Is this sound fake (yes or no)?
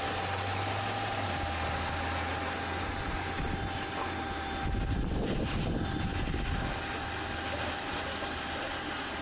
no